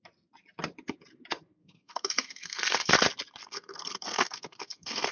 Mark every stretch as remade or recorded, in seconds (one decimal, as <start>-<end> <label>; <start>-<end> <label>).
0.0-1.6 recorded; 1.6-2.9 remade; 2.9-3.4 recorded; 3.4-5.1 remade